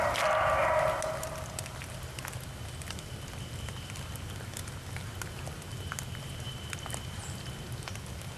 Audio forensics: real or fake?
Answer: real